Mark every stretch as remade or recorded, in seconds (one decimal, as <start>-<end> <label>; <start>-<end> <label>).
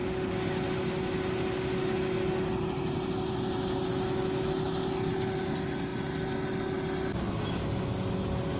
0.0-8.6 recorded